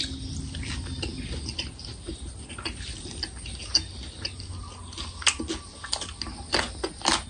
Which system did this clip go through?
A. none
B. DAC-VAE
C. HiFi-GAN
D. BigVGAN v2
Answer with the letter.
A